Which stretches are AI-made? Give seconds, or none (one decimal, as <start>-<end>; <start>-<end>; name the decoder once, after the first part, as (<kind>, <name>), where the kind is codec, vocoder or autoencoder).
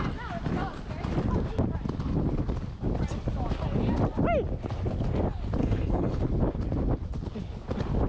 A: 5.6-6.2 (codec, HILCodec)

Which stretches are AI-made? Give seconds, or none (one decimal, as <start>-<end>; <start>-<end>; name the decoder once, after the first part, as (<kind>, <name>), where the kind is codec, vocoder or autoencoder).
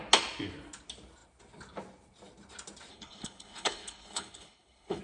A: 2.9-5.0 (codec, HILCodec)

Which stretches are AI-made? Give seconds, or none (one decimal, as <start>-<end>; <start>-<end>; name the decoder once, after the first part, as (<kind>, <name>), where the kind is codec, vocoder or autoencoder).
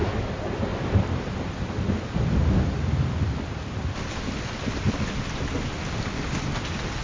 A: none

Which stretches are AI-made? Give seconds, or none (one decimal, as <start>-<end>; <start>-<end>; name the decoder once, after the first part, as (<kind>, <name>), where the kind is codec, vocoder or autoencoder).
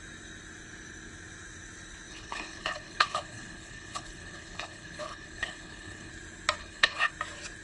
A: 2.1-6.1 (codec, HILCodec); 6.6-7.1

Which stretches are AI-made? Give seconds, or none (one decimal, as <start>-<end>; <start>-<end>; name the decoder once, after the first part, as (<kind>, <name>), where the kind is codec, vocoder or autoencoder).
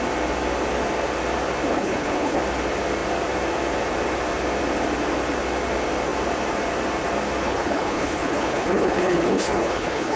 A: 1.7-2.4 (codec, HILCodec); 7.4-10.2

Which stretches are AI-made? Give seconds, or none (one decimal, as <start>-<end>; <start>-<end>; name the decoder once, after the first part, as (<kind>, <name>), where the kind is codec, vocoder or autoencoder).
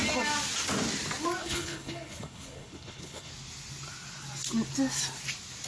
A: 1.4-3.3 (codec, HILCodec)